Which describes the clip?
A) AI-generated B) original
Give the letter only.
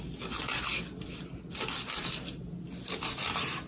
B